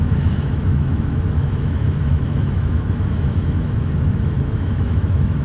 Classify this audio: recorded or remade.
remade